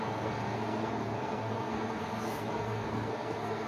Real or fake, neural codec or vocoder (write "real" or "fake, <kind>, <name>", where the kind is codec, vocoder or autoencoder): fake, codec, SNAC